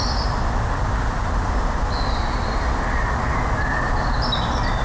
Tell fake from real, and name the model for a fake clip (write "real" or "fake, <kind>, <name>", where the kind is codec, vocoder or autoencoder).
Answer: real